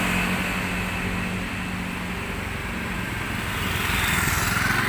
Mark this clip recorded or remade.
recorded